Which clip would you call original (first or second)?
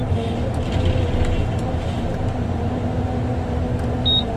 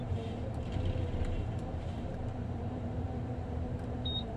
first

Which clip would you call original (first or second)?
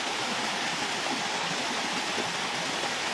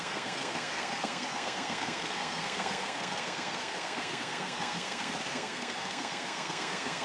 first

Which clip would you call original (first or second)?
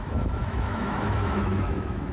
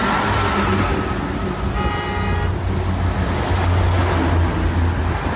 second